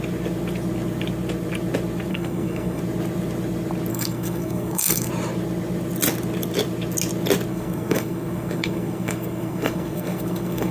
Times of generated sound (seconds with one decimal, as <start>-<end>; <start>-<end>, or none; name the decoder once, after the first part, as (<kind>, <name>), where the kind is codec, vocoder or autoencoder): 2.1-2.8 (codec, SNAC); 3.9-5.1; 7.5-10.7

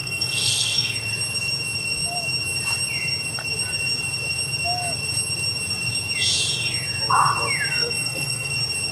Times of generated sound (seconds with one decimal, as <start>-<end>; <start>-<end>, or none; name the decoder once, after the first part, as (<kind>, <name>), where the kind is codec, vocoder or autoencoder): 0.0-0.9 (codec, SNAC); 7.7-8.5